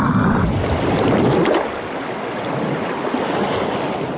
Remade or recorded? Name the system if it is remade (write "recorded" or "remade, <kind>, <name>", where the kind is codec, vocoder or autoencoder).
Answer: recorded